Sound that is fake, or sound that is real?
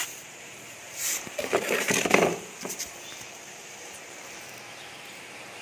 fake